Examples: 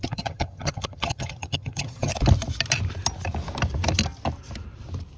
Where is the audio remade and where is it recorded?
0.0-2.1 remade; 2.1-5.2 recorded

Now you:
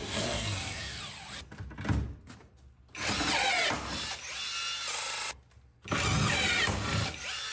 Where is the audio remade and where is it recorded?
0.0-1.0 remade; 1.0-7.5 recorded

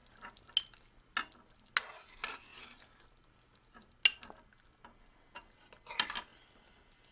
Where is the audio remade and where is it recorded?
0.0-7.1 recorded

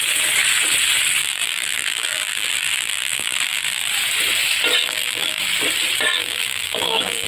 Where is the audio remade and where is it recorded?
0.0-1.2 recorded; 1.2-3.9 remade; 3.9-4.8 recorded; 4.8-5.4 remade; 5.4-6.1 recorded; 6.1-7.3 remade

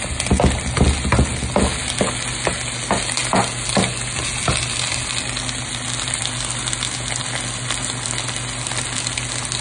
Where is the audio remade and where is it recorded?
0.0-9.6 recorded

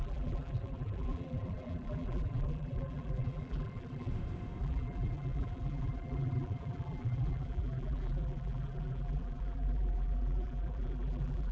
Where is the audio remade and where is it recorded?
0.0-4.1 remade; 4.1-4.6 recorded; 4.6-11.5 remade

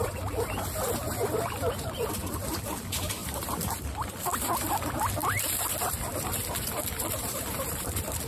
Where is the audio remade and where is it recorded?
0.0-3.2 recorded; 3.2-4.7 remade; 4.7-5.2 recorded; 5.2-8.3 remade

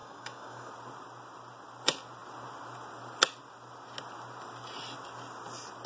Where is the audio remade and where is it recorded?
0.0-0.7 remade; 0.7-5.9 recorded